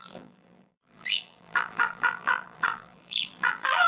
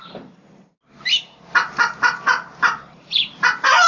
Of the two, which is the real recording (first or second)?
second